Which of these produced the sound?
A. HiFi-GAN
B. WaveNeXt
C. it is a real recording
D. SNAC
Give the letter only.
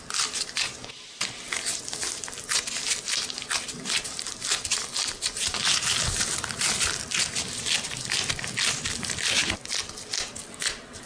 C